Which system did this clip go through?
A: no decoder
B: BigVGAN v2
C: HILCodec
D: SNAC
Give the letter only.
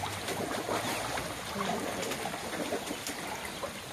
A